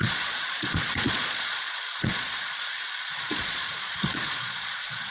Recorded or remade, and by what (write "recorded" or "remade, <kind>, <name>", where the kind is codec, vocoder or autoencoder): remade, vocoder, Vocos